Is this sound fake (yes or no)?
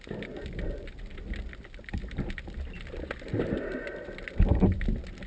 no